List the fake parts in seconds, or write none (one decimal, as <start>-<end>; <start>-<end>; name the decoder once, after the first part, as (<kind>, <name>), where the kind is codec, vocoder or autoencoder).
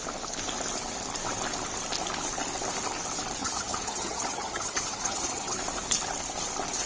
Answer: 3.4-5.6 (vocoder, HiFi-GAN)